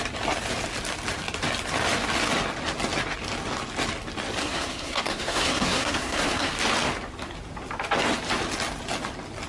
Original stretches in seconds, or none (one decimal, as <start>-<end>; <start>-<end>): 0.0-4.4; 6.5-9.5